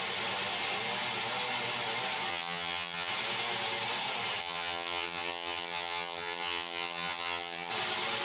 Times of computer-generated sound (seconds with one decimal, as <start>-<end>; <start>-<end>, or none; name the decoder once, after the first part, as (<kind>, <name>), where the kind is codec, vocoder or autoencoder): 2.3-3.1 (vocoder, HiFi-GAN); 4.4-7.7